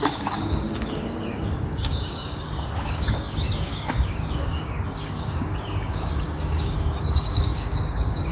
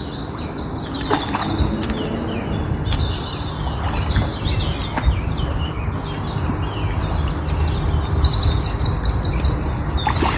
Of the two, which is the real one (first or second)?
second